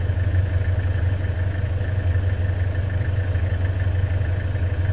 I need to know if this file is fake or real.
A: real